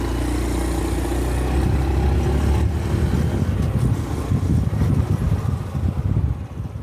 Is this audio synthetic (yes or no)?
no